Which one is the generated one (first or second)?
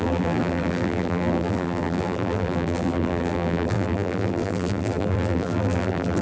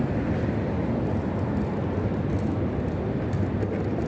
first